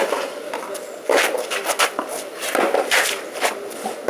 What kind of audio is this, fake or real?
real